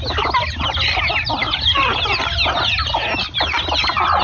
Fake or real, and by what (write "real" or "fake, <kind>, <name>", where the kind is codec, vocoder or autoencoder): real